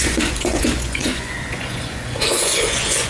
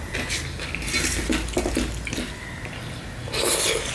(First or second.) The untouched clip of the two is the second